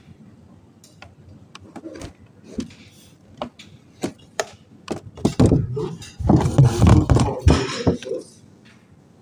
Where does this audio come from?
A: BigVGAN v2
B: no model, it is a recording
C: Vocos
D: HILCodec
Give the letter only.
B